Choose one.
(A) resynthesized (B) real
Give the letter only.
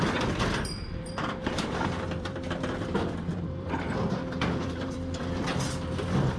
A